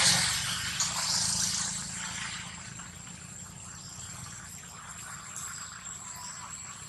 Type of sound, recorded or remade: recorded